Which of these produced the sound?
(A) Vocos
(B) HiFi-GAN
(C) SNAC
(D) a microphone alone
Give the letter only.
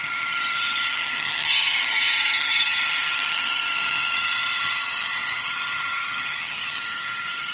B